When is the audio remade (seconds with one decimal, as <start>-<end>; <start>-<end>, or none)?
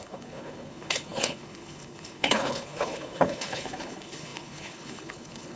0.0-5.6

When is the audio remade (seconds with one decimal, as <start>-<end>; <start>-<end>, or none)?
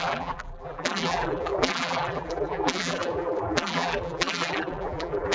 0.0-5.3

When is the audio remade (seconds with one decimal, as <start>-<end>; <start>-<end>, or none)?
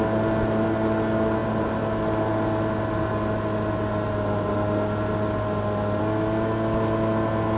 none